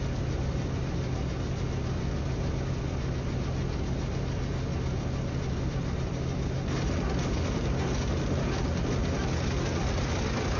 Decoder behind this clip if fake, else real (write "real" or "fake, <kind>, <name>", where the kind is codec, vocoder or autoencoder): real